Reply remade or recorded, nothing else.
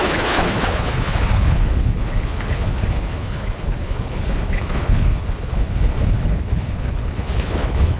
remade